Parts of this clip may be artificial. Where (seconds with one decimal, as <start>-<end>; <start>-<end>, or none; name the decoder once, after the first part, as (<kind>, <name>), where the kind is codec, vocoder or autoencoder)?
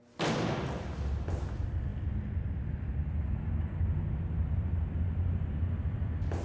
none